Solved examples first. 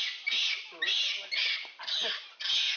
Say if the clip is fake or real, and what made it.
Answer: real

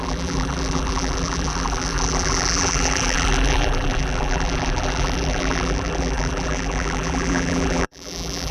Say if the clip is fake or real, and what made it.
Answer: fake, vocoder, BigVGAN v2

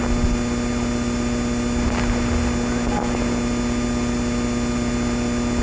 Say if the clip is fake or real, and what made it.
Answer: real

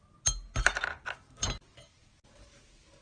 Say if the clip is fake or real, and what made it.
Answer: real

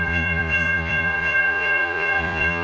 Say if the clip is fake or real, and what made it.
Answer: fake, vocoder, Vocos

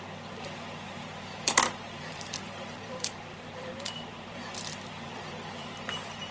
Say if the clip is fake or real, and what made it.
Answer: fake, vocoder, BigVGAN v2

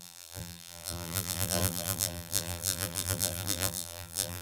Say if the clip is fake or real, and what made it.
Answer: fake, vocoder, BigVGAN v2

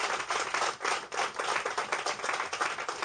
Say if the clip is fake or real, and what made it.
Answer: real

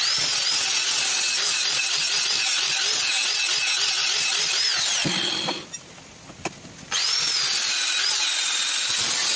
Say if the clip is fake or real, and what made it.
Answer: real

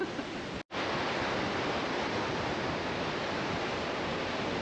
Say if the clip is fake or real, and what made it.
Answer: real